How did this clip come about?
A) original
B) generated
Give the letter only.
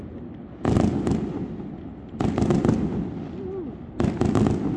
A